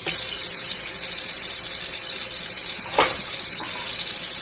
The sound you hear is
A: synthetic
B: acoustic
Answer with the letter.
B